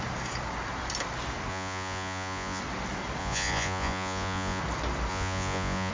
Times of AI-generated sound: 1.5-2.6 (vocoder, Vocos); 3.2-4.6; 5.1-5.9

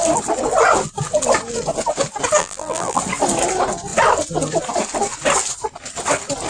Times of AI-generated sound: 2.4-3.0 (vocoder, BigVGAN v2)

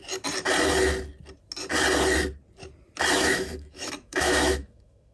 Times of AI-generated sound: 3.1-5.1 (autoencoder, DAC-VAE)

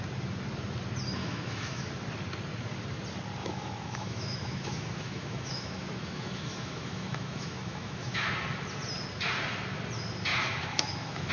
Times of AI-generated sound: 1.2-1.9 (autoencoder, DAC-VAE); 3.4-8.3; 10.3-11.3

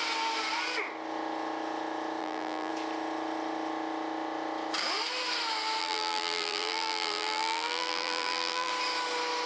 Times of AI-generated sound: 2.2-2.7 (vocoder, BigVGAN v2); 5.8-8.7

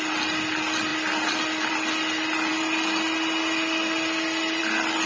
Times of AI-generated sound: none

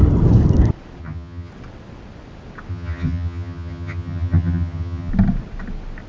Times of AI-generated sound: 1.0-1.5 (vocoder, HiFi-GAN); 2.7-5.1

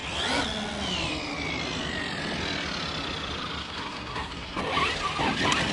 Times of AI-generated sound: 3.6-4.6 (codec, SNAC)